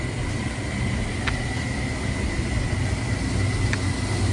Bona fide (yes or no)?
yes